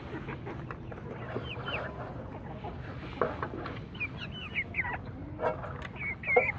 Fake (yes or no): no